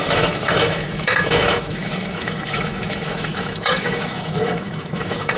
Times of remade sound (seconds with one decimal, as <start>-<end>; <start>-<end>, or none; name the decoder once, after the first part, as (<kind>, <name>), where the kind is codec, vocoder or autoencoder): 0.0-5.4 (autoencoder, DAC-VAE)